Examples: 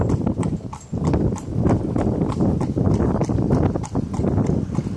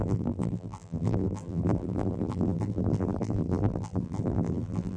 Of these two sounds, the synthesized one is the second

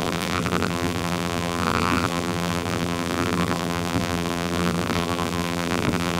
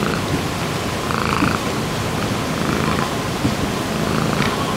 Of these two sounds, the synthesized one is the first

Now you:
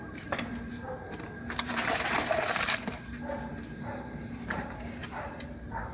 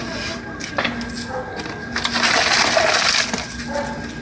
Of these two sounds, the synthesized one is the first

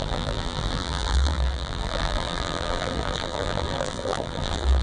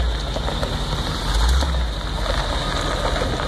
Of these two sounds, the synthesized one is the first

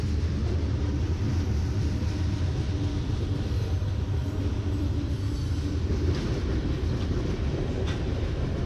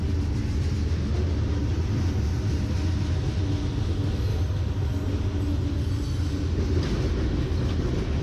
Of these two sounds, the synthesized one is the first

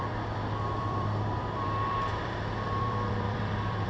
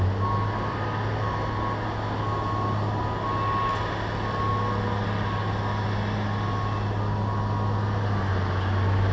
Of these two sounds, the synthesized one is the first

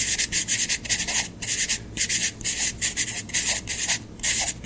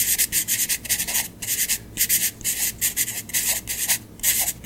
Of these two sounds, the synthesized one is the first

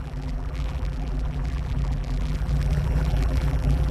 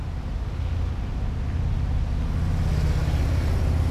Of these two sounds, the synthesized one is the first